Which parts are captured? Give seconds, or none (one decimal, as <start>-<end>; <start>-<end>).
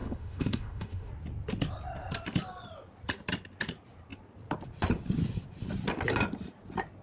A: 1.1-7.0